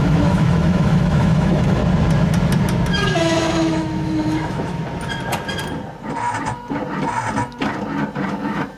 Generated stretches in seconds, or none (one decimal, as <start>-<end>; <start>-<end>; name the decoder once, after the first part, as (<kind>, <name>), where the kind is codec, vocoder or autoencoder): 0.0-1.8 (autoencoder, DAC-VAE); 2.9-4.8; 8.3-8.8

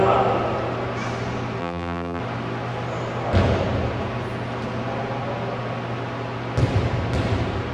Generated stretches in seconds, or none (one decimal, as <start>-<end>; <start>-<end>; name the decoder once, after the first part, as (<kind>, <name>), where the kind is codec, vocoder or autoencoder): 1.6-2.2 (vocoder, BigVGAN v2)

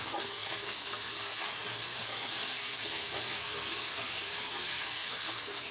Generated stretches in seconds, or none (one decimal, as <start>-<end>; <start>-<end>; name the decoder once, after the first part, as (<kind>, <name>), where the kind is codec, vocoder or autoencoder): 0.0-5.7 (codec, SNAC)

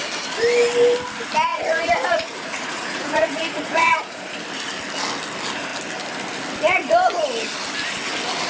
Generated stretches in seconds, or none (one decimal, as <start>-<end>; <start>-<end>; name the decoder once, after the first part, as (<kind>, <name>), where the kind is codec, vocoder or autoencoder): 1.5-4.4 (vocoder, Vocos)

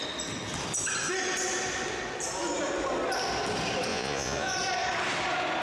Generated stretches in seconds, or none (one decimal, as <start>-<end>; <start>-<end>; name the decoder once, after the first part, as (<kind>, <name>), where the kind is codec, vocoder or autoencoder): 3.9-4.5 (vocoder, Vocos)

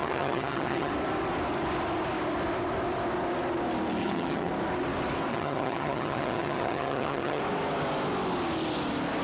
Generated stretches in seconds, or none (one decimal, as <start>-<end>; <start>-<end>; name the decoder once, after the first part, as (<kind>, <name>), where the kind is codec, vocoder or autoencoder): 0.0-0.9 (vocoder, HiFi-GAN); 4.0-4.5; 5.3-7.4

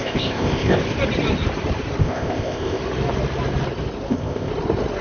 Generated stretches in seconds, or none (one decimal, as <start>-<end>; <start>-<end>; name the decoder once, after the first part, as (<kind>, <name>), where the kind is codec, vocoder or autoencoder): 0.0-0.8 (codec, ZipCodec); 2.0-2.8; 4.1-4.5